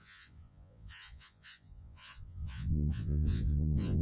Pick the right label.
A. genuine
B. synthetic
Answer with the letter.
B